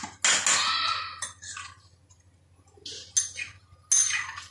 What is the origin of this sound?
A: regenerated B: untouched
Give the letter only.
B